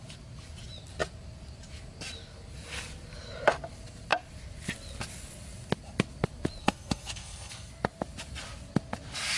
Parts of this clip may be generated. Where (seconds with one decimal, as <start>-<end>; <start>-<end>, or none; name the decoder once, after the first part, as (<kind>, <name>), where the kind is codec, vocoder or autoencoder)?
6.6-7.7 (codec, SNAC)